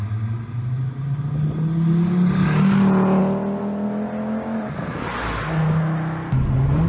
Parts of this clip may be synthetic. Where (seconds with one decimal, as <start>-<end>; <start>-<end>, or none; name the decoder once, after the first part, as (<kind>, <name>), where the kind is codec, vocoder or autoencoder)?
none